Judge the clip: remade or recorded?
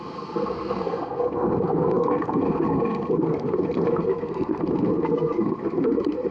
remade